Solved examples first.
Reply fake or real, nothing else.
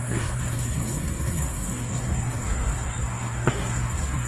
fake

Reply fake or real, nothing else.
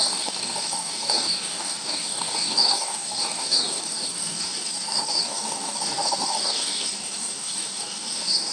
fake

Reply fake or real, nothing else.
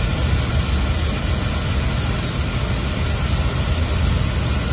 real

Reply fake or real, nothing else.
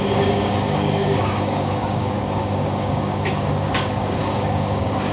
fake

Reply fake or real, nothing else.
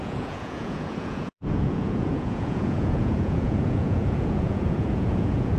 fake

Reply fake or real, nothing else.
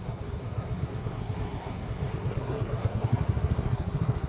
fake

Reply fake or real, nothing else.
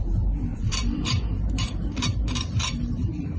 fake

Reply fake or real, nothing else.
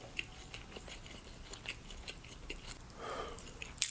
real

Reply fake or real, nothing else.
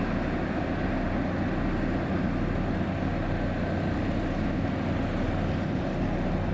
real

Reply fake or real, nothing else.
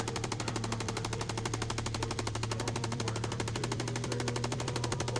fake